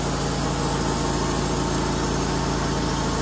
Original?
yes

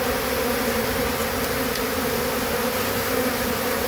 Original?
yes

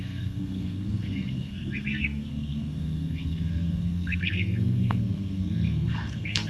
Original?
no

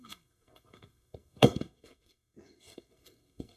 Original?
no